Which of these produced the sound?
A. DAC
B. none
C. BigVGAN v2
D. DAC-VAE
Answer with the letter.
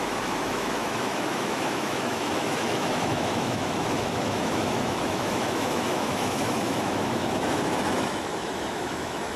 D